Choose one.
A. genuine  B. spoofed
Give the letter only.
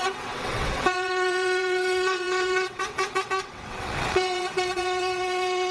B